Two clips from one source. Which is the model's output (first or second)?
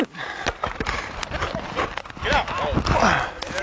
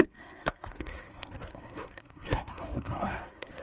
second